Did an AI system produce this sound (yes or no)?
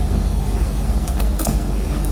yes